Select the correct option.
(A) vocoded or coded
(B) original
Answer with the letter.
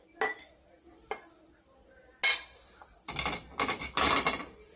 B